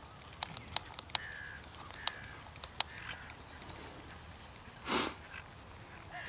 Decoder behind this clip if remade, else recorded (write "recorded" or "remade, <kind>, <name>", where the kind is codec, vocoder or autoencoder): recorded